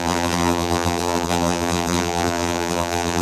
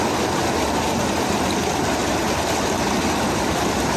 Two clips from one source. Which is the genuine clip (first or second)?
second